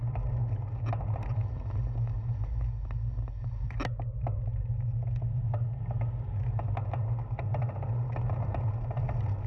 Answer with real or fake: real